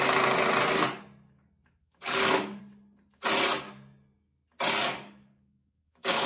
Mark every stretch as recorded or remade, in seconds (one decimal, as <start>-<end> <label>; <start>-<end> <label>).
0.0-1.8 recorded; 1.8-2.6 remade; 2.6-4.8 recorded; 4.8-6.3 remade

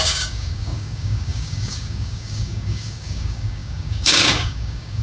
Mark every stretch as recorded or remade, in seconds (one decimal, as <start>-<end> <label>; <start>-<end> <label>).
0.0-5.0 remade

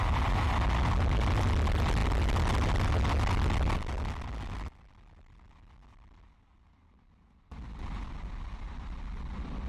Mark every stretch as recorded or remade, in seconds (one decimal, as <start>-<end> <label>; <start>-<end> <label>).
0.0-9.7 recorded

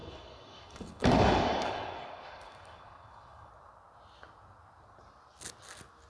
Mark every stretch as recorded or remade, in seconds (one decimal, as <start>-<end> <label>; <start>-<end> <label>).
0.0-3.5 remade; 3.5-6.1 recorded

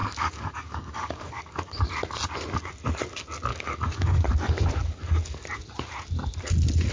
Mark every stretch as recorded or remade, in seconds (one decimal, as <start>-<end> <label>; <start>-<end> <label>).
0.0-1.8 remade; 1.8-3.5 recorded; 3.5-4.3 remade; 4.3-4.8 recorded; 4.8-5.4 remade; 5.4-6.9 recorded

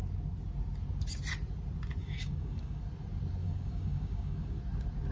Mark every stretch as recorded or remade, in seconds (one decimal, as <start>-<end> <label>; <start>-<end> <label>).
0.0-2.0 recorded; 2.0-2.8 remade; 2.8-3.4 recorded; 3.4-4.6 remade; 4.6-5.1 recorded

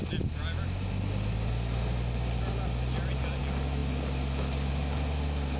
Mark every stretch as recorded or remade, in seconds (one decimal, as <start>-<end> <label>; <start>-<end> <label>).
0.0-5.6 recorded

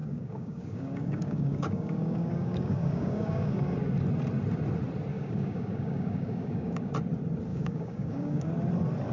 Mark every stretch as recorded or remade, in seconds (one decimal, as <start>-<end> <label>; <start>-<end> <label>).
0.0-3.6 remade; 3.6-5.1 recorded; 5.1-6.9 remade; 6.9-7.5 recorded; 7.5-8.5 remade; 8.5-9.1 recorded